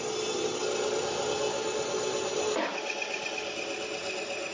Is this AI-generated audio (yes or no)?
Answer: no